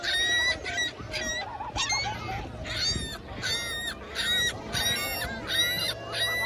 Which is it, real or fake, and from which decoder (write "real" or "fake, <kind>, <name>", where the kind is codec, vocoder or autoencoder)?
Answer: real